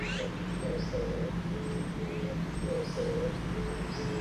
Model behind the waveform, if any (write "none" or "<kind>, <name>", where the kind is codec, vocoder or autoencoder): none